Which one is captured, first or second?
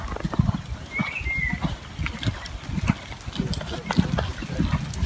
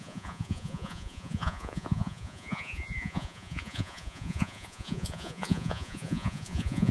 first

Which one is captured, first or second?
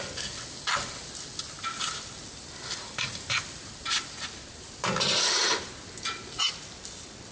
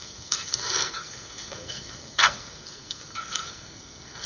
first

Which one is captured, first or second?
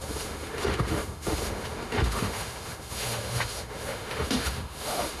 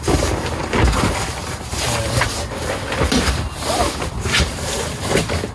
second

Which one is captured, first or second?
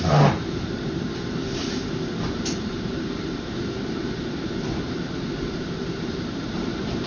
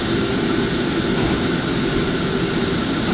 second